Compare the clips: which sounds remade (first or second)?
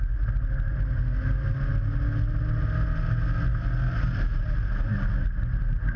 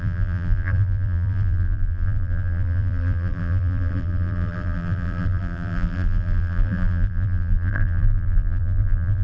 second